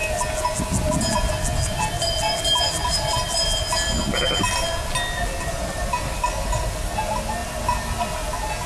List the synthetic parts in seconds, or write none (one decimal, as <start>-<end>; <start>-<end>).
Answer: none